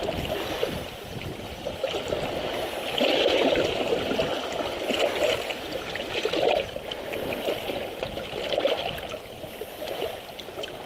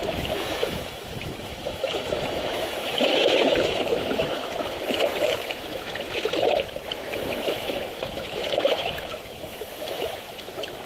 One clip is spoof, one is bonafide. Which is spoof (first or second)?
second